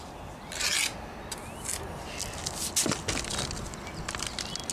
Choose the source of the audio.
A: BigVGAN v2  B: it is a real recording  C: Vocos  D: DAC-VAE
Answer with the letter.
B